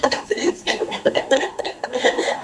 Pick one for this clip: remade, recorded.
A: remade